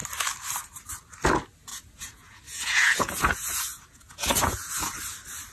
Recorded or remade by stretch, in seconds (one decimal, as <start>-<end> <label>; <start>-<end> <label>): 0.0-1.7 recorded; 1.7-5.0 remade; 5.0-5.5 recorded